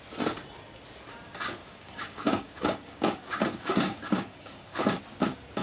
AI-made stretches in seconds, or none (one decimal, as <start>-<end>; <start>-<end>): 1.6-5.0